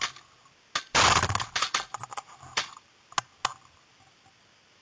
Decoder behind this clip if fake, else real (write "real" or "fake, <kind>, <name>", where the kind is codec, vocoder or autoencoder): real